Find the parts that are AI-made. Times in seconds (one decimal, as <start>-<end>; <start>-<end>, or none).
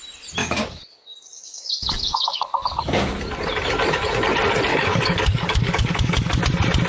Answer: 0.4-3.1; 4.7-6.4